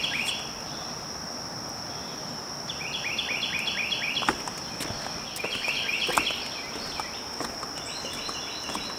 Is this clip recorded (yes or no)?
yes